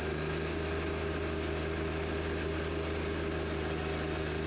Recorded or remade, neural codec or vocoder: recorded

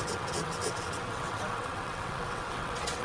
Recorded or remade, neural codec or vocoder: remade, vocoder, WaveNeXt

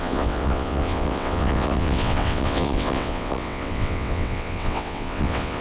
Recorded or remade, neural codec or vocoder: remade, vocoder, WaveNeXt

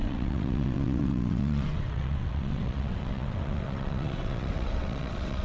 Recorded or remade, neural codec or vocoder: remade, vocoder, WaveNeXt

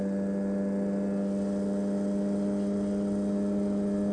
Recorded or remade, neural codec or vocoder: recorded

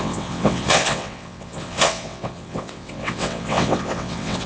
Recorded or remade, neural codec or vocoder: remade, vocoder, WaveNeXt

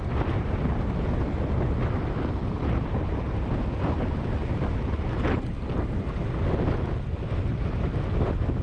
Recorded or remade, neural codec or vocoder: recorded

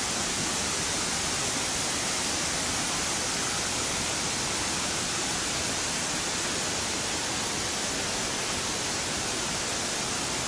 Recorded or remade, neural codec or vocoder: recorded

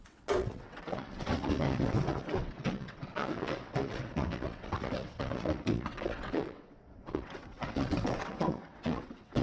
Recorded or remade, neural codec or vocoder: remade, vocoder, WaveNeXt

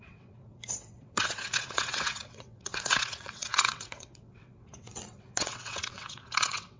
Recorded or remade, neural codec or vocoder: remade, vocoder, WaveNeXt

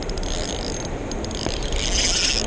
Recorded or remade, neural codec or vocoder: recorded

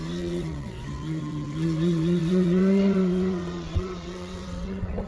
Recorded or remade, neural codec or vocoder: remade, vocoder, WaveNeXt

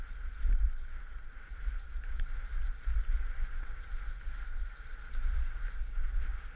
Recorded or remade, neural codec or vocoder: recorded